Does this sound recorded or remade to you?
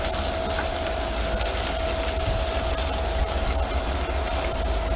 recorded